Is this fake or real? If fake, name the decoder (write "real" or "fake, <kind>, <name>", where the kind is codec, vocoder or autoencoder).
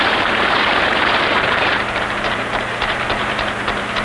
fake, vocoder, BigVGAN v2